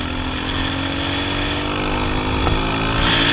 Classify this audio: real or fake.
real